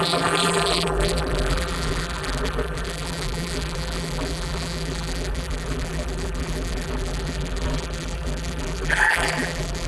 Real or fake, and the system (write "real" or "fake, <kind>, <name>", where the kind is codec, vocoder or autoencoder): fake, vocoder, BigVGAN v2